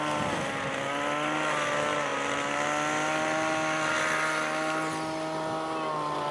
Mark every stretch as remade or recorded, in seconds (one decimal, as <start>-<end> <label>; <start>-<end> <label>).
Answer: 0.0-6.3 recorded